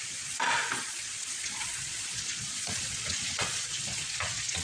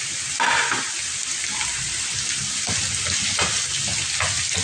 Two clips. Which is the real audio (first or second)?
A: second